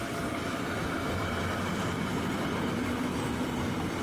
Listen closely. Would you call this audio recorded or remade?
recorded